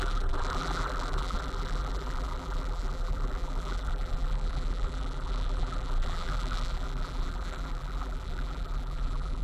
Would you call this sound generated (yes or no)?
yes